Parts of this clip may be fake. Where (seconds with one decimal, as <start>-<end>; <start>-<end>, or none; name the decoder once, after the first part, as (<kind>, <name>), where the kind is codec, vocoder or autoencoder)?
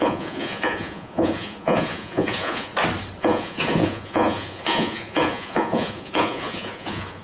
0.0-2.7 (vocoder, Vocos); 3.2-7.2